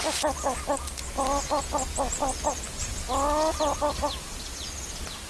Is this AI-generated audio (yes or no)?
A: no